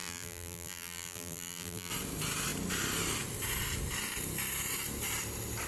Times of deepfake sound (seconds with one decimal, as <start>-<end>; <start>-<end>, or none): 0.0-1.9